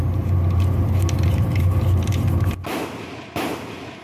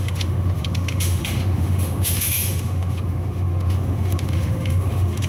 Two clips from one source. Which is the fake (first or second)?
second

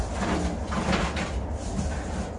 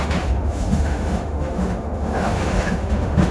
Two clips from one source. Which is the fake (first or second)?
second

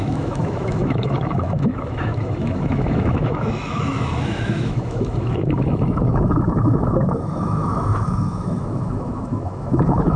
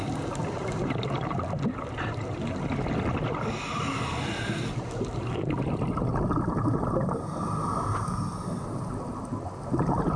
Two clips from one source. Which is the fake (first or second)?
first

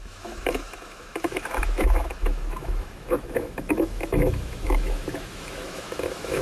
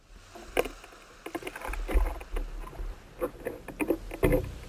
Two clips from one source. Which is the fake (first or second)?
first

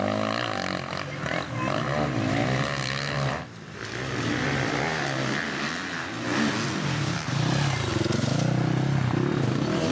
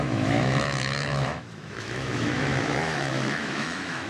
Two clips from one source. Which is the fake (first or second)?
second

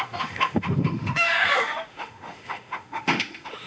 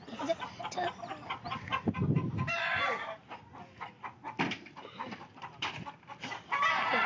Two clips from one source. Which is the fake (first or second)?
first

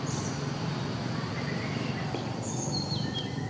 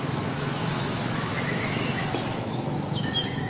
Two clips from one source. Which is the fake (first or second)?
second